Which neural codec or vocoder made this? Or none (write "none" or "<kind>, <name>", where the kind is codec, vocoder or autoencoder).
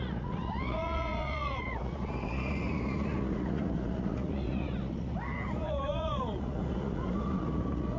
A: vocoder, Vocos